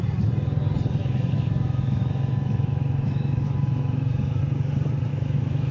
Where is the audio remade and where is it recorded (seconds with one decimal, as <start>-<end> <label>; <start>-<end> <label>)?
0.0-1.0 recorded; 1.0-4.4 remade; 4.4-5.1 recorded; 5.1-5.7 remade